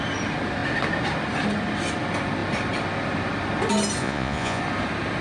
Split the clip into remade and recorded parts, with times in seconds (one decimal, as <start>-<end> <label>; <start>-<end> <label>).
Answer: 0.0-4.0 recorded; 4.0-4.6 remade; 4.6-5.2 recorded

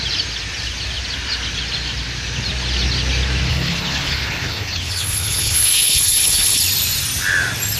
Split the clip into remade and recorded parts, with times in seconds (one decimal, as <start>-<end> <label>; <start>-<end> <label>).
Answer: 0.0-3.5 recorded; 3.5-6.6 remade; 6.6-7.8 recorded

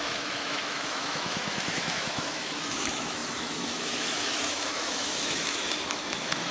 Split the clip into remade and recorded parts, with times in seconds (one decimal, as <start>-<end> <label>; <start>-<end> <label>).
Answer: 0.0-6.5 remade

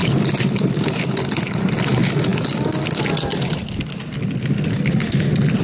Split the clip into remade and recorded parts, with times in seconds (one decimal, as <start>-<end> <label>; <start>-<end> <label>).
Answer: 0.0-5.6 recorded